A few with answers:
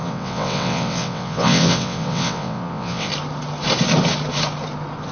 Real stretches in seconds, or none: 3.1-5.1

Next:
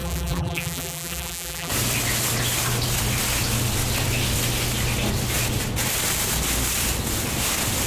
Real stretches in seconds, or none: 1.7-7.9

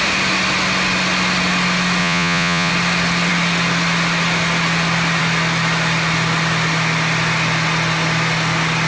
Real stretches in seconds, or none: 0.0-2.0; 2.7-8.9

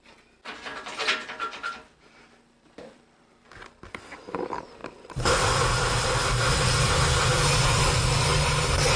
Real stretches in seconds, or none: 8.3-9.0

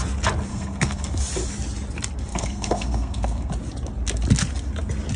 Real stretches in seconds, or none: 0.0-0.5; 1.2-2.3; 3.5-5.2